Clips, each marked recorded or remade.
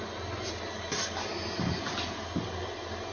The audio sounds recorded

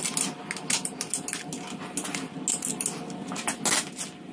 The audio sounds recorded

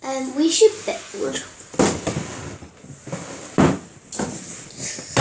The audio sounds recorded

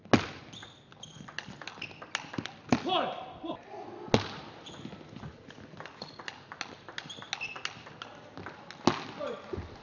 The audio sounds recorded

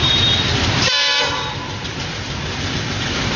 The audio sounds remade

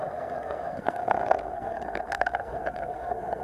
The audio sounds remade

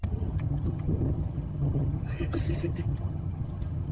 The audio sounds remade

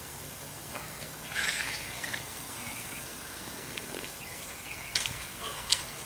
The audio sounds remade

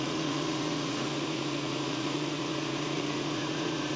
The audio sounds remade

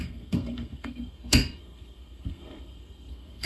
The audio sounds remade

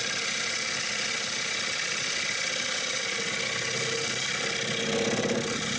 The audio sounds recorded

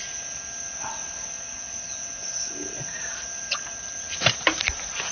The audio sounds recorded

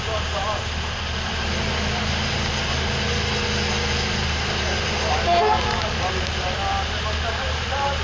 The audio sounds recorded